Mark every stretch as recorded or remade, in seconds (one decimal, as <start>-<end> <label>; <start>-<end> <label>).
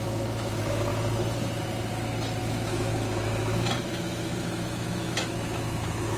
0.0-0.9 remade; 0.9-2.4 recorded; 2.4-6.2 remade